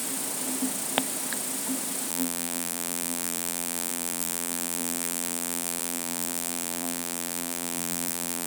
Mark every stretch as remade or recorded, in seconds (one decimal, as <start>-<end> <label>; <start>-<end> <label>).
0.0-2.1 recorded; 2.1-8.5 remade